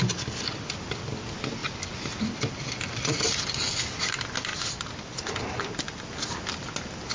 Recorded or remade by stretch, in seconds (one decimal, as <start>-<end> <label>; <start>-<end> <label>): 0.0-7.1 recorded